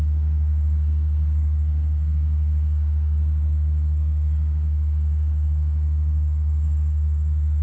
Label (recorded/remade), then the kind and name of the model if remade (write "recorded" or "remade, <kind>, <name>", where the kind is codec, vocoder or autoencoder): remade, codec, SNAC